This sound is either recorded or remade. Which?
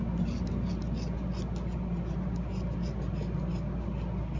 recorded